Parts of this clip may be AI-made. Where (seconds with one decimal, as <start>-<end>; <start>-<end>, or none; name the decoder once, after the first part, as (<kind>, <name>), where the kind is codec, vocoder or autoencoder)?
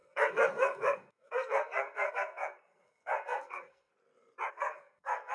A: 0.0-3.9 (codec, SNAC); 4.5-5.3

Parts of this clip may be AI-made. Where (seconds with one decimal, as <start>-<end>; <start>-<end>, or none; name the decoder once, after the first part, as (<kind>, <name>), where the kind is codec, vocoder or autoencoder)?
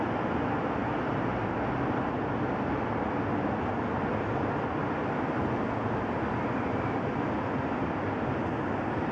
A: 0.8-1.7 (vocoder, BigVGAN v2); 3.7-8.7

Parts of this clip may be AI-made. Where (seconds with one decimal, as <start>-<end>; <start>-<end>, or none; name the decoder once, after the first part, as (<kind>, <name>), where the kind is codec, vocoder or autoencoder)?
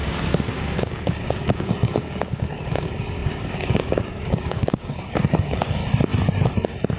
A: 0.0-5.8 (codec, DAC)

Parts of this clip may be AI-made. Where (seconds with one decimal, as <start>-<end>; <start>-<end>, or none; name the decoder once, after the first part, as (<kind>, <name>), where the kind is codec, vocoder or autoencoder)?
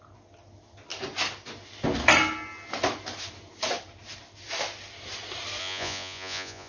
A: 5.6-6.7 (vocoder, Vocos)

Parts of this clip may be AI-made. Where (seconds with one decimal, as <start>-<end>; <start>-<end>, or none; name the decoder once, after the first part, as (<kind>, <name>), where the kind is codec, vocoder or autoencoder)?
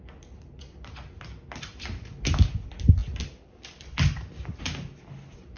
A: none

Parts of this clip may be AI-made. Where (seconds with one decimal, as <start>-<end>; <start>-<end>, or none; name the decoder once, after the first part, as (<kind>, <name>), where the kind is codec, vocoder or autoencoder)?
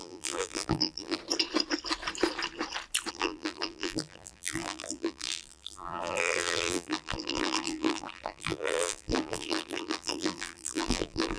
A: 0.0-1.2 (vocoder, BigVGAN v2); 3.1-11.4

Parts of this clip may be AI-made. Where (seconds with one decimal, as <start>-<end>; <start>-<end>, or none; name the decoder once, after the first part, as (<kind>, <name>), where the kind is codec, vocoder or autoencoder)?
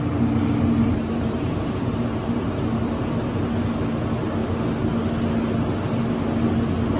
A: 0.8-3.8 (vocoder, BigVGAN v2)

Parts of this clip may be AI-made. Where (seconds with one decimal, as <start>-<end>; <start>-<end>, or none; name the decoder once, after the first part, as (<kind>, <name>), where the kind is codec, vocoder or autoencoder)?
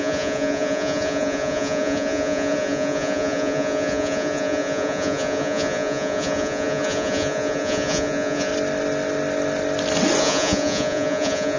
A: 0.0-8.5 (vocoder, Vocos); 10.2-11.6